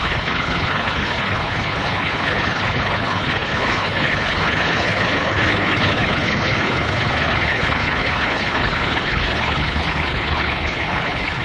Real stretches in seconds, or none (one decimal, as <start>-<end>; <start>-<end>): none